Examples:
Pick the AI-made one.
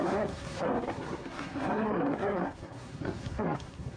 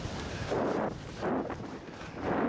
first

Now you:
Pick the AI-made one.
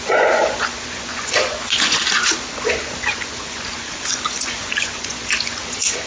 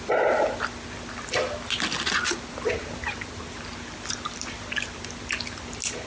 first